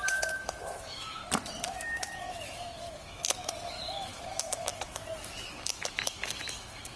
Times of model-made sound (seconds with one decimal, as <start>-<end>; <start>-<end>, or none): 0.0-1.2; 1.7-7.0